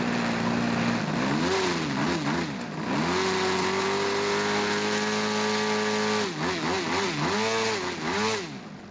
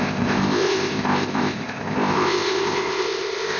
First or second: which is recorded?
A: first